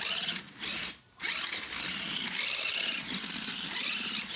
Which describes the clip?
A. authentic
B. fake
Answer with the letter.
B